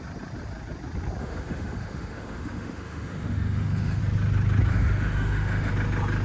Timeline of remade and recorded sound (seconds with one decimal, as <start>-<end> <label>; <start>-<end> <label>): 0.0-1.2 recorded; 1.2-4.0 remade; 4.0-4.7 recorded; 4.7-5.7 remade; 5.7-6.2 recorded